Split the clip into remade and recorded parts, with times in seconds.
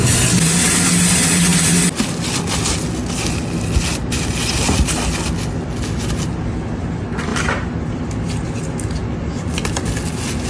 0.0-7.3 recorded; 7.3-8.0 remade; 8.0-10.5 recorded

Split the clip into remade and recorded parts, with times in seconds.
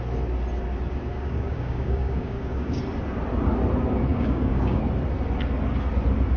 0.0-1.1 recorded; 1.1-2.8 remade; 2.8-4.1 recorded; 4.1-4.8 remade; 4.8-6.4 recorded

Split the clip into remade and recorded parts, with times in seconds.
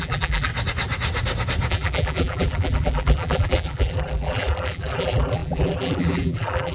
0.0-0.5 remade; 0.5-1.7 recorded; 1.7-6.7 remade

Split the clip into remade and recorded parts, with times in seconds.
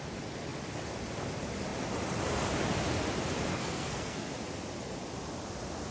0.0-3.5 recorded; 3.5-4.3 remade; 4.3-5.9 recorded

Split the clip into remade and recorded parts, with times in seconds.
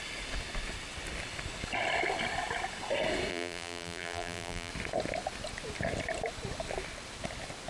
0.0-3.3 recorded; 3.3-4.7 remade; 4.7-7.7 recorded